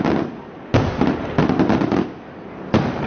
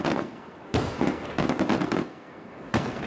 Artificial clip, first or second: second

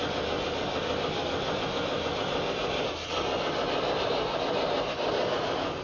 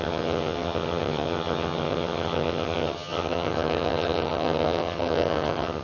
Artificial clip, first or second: second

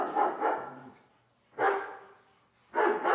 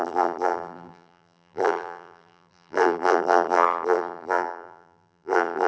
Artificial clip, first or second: second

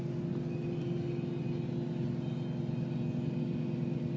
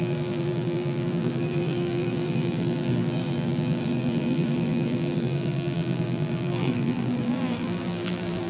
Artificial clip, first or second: second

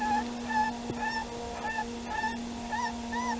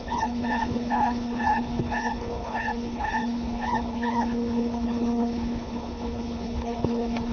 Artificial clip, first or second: second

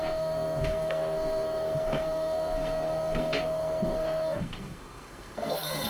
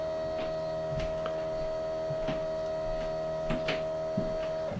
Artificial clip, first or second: first